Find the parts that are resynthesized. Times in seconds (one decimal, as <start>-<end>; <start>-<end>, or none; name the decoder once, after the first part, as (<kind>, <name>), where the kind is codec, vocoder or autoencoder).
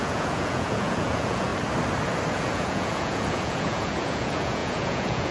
0.0-1.5 (vocoder, Vocos); 2.3-5.3